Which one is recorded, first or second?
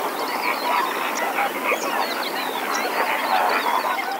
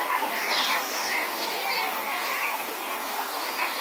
first